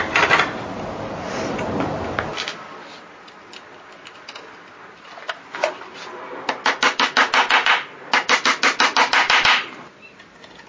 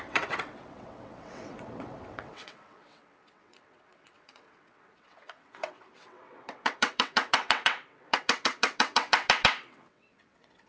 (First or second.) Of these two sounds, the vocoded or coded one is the second